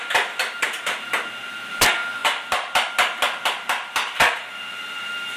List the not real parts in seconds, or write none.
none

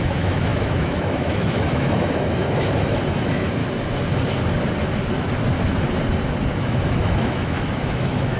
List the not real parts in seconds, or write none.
0.0-3.6 (autoencoder, DAC-VAE); 6.6-8.4

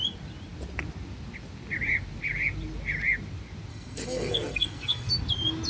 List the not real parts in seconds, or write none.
3.7-5.1 (codec, SNAC)

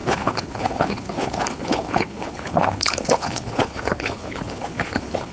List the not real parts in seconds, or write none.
0.0-5.3 (codec, HILCodec)

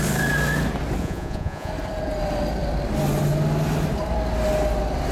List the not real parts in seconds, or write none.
1.0-1.7 (vocoder, Vocos)